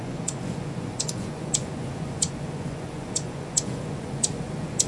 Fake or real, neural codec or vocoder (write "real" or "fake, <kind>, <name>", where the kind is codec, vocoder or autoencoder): fake, vocoder, Vocos